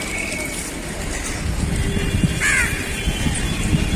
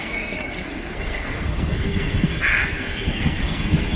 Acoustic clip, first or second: first